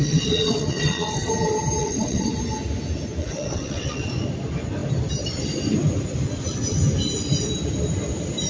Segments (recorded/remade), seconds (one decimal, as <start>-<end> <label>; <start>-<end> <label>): 0.0-1.3 remade; 1.3-1.8 recorded; 1.8-2.3 remade; 2.3-3.2 recorded; 3.2-4.1 remade; 4.1-8.5 recorded